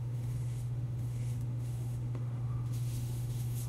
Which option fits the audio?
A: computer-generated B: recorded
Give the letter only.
A